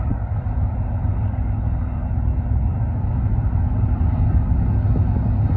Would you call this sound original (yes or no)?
yes